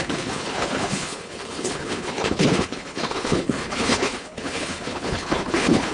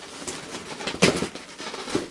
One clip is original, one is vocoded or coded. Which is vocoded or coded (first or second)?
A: first